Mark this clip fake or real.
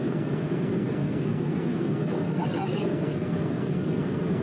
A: fake